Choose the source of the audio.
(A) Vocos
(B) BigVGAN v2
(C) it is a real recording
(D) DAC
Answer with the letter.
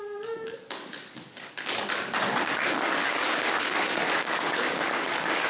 D